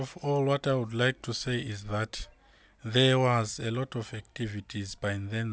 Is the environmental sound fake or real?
real